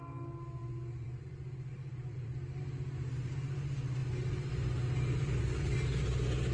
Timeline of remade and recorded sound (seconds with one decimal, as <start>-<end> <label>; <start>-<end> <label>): 0.0-0.6 recorded; 0.6-2.6 remade; 2.6-6.5 recorded